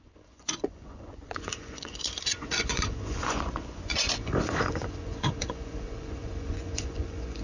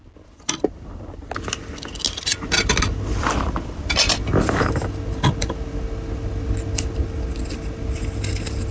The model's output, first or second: first